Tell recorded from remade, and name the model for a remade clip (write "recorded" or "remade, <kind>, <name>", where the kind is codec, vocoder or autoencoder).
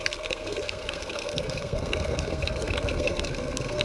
remade, codec, SNAC